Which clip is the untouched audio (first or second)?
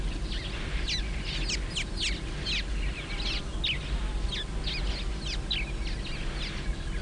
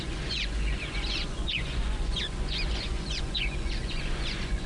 first